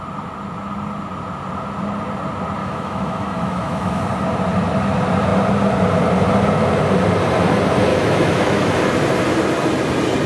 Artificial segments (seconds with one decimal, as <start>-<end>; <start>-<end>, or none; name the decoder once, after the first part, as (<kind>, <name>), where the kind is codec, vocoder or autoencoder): 2.6-4.0 (autoencoder, DAC-VAE); 7.9-8.8